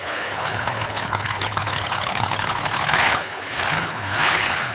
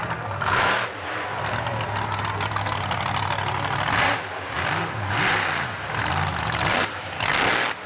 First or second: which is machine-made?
first